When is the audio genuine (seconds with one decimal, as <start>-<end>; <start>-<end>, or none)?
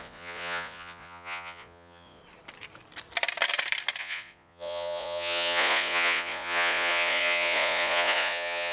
2.2-4.0